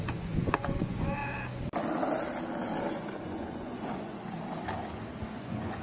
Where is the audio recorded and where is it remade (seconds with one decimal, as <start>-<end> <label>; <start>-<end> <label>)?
0.0-1.2 remade; 1.2-2.9 recorded; 2.9-4.2 remade; 4.2-5.3 recorded; 5.3-5.8 remade